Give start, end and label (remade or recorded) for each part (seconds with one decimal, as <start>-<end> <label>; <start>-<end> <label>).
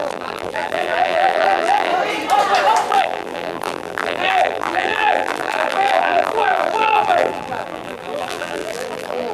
0.0-1.9 remade; 1.9-2.9 recorded; 2.9-9.3 remade